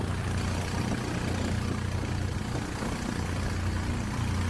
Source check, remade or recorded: recorded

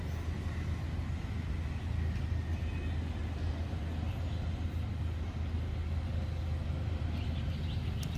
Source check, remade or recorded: recorded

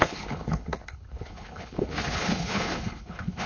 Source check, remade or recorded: remade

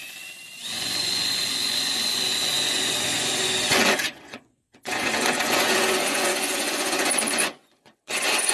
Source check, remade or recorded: remade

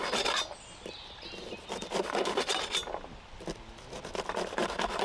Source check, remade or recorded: recorded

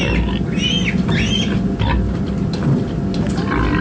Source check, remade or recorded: recorded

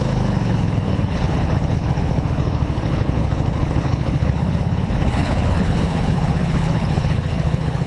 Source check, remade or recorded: remade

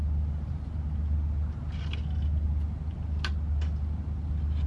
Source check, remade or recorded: recorded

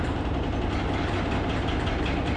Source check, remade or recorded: recorded